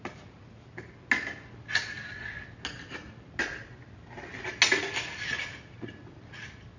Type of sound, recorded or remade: recorded